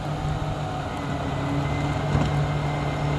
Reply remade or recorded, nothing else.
recorded